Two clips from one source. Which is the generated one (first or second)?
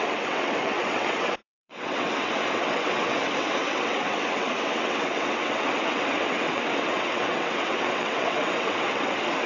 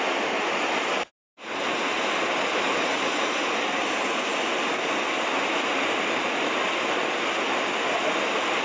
first